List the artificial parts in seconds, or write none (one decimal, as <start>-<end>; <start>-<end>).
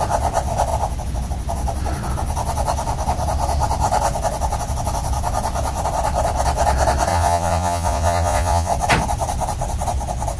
7.1-8.7